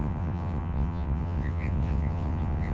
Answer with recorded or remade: remade